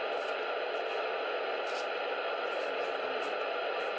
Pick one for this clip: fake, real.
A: real